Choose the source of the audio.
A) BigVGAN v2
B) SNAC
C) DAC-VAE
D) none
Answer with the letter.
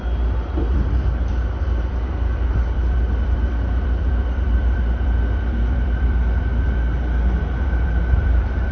A